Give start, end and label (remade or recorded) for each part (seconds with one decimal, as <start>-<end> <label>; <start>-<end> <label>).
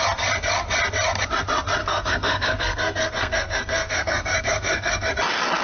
0.0-1.8 recorded; 1.8-5.1 remade; 5.1-5.6 recorded